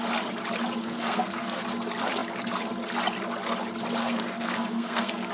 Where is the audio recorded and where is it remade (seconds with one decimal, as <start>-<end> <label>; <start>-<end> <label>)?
0.0-0.8 recorded; 0.8-1.6 remade; 1.6-4.0 recorded; 4.0-5.3 remade